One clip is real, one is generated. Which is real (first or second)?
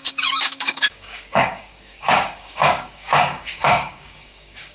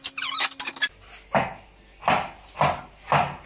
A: second